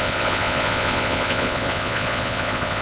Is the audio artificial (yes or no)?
yes